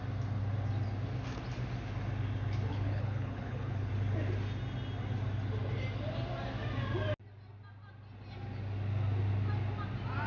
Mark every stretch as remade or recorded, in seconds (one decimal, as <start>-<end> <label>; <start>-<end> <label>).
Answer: 0.0-2.7 recorded; 2.7-3.9 remade; 3.9-10.3 recorded